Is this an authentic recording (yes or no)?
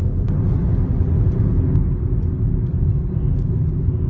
yes